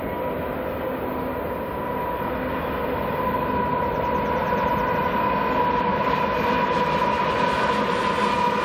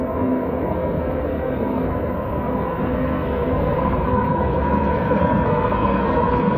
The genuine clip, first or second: first